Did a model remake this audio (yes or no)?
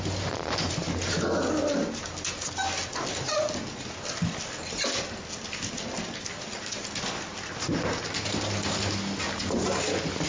no